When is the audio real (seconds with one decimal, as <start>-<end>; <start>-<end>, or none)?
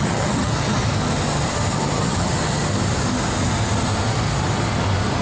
0.8-1.7; 2.4-5.2